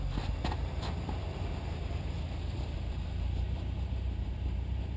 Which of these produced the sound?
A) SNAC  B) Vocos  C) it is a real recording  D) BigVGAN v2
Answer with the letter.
D